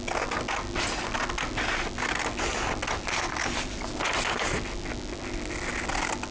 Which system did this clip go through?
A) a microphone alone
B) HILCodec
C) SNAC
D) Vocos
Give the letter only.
A